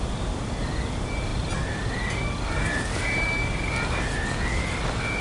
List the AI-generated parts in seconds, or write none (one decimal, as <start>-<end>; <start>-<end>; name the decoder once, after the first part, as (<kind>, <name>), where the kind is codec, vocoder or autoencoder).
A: none